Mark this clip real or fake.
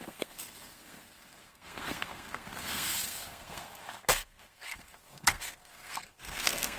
fake